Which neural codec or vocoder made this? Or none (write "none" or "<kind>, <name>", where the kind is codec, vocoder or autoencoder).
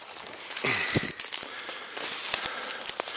none